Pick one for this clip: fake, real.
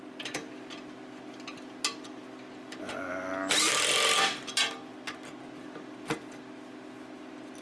real